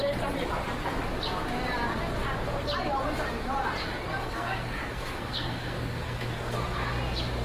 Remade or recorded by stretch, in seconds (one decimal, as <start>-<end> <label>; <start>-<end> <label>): 0.0-4.2 recorded; 4.2-6.9 remade; 6.9-7.4 recorded

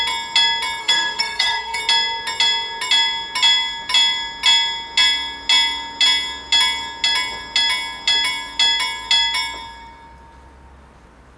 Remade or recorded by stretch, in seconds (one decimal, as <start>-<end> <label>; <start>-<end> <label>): 0.0-0.8 recorded; 0.8-1.8 remade; 1.8-11.4 recorded

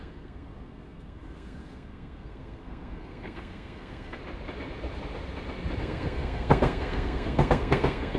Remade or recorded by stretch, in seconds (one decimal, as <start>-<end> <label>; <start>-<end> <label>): 0.0-4.2 remade; 4.2-5.8 recorded; 5.8-8.2 remade

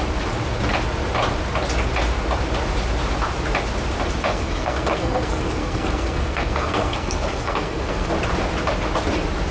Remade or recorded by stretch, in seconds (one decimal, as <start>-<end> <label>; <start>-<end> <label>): 0.0-4.3 recorded; 4.3-8.1 remade; 8.1-9.5 recorded

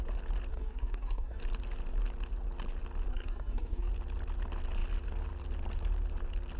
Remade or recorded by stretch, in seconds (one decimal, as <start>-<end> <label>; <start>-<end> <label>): 0.0-0.5 recorded; 0.5-1.4 remade; 1.4-3.1 recorded; 3.1-3.9 remade; 3.9-6.6 recorded

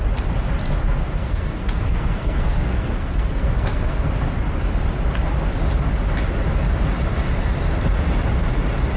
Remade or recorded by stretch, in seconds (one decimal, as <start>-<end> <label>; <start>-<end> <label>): 0.0-1.2 recorded; 1.2-4.1 remade; 4.1-9.0 recorded

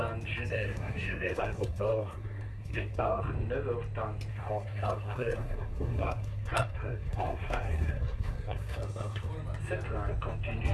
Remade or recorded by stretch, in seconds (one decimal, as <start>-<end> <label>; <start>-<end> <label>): 0.0-0.5 recorded; 0.5-3.2 remade; 3.2-4.3 recorded; 4.3-9.3 remade; 9.3-10.7 recorded